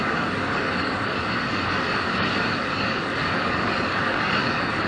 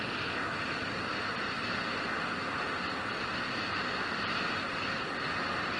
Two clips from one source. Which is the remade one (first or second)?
first